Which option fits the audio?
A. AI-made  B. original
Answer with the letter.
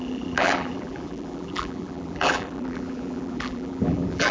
A